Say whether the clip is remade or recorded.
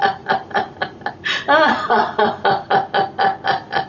recorded